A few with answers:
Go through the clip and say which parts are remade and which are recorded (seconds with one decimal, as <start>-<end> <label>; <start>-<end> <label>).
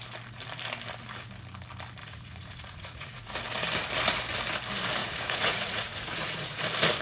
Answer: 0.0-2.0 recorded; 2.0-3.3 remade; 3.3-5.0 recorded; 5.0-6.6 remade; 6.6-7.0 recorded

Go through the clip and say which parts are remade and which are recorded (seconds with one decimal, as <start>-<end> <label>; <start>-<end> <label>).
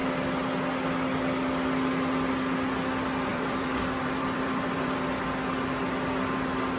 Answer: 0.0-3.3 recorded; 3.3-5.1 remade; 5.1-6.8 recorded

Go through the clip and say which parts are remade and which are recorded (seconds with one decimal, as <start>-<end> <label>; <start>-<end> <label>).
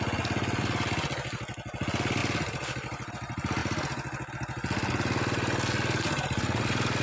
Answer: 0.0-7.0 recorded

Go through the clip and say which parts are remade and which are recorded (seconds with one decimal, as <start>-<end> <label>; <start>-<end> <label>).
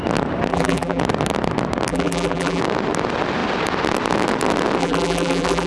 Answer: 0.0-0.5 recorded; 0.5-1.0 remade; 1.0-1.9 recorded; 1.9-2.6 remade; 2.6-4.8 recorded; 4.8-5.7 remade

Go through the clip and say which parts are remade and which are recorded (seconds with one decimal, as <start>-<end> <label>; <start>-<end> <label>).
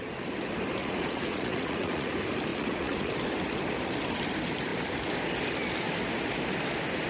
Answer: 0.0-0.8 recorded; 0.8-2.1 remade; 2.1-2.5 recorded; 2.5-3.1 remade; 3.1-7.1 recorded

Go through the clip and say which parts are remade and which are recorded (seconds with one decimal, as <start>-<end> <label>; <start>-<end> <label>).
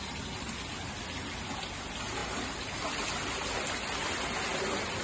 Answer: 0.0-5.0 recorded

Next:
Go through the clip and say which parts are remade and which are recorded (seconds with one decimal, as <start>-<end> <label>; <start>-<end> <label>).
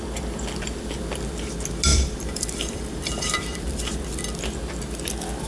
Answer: 0.0-1.9 recorded; 1.9-4.0 remade; 4.0-5.5 recorded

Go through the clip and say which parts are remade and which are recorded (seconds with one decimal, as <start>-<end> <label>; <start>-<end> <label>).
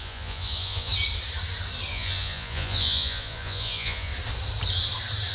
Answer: 0.0-0.9 remade; 0.9-1.9 recorded; 1.9-4.1 remade; 4.1-5.3 recorded